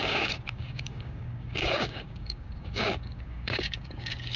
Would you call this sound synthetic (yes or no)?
yes